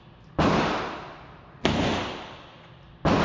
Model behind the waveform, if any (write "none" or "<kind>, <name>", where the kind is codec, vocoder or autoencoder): none